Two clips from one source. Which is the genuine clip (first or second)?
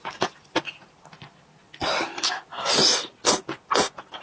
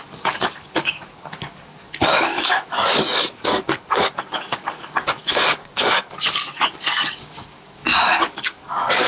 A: first